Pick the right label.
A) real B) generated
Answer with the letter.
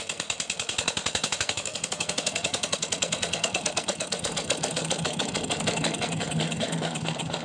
B